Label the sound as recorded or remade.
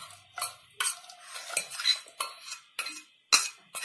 recorded